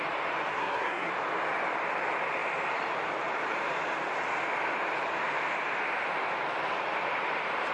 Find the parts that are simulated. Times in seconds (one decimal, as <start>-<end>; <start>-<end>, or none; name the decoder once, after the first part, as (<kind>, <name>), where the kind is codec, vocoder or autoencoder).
0.5-1.1 (codec, SNAC)